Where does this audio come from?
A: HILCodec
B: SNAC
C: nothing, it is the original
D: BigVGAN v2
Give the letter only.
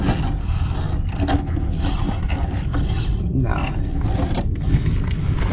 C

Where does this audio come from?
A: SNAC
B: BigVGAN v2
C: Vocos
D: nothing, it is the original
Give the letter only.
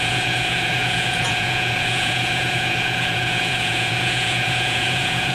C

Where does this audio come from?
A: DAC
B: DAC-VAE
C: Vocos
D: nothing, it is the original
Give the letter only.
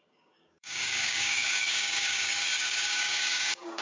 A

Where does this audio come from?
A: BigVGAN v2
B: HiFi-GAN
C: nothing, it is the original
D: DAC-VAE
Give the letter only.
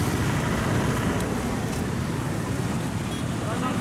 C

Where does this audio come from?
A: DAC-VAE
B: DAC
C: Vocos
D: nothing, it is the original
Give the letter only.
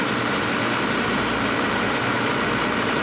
D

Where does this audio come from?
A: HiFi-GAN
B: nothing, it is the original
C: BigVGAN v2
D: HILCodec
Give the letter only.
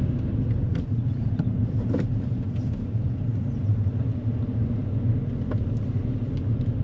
B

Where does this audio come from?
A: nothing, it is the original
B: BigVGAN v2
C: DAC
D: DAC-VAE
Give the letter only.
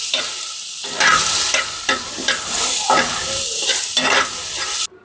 A